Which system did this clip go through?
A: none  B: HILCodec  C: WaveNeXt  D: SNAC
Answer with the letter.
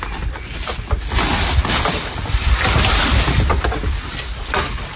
A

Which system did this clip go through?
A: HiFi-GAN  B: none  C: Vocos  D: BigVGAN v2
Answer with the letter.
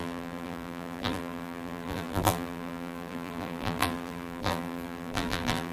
D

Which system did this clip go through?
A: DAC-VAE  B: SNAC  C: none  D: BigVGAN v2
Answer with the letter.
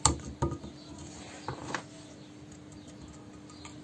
C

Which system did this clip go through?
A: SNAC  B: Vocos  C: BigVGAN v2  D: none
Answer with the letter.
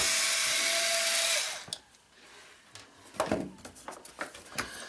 D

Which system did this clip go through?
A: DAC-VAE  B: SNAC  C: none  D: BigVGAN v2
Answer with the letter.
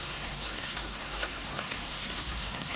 B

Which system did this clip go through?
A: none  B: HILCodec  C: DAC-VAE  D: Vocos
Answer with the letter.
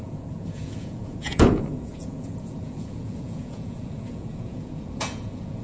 D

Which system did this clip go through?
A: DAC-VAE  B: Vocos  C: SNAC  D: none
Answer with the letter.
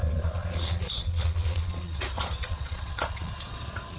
B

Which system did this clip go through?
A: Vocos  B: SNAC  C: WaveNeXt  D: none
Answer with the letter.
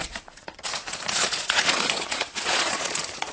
A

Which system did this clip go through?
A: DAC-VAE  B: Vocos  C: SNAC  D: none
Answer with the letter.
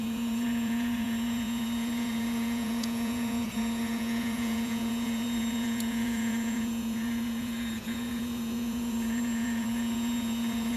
B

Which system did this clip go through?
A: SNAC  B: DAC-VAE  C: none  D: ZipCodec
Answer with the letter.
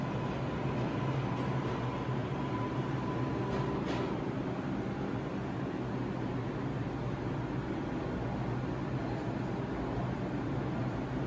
C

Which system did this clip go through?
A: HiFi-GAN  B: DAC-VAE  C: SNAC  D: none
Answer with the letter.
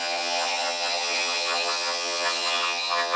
A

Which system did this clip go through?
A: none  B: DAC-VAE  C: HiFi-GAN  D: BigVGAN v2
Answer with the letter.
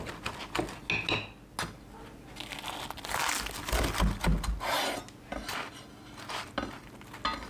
A